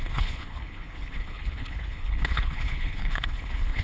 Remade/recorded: remade